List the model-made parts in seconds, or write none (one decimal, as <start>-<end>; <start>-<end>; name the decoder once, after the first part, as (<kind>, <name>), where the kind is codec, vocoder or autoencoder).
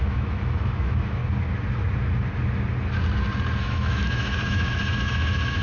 0.0-1.2 (autoencoder, DAC-VAE); 3.6-5.6